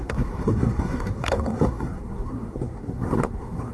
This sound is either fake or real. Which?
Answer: fake